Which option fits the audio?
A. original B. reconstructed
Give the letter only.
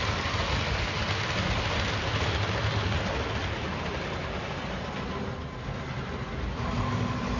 A